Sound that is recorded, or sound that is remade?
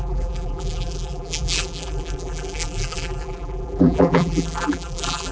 remade